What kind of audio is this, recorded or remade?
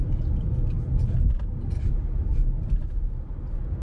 recorded